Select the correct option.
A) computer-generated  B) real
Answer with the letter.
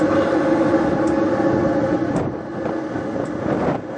B